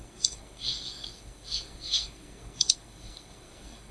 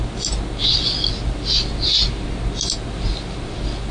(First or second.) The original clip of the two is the second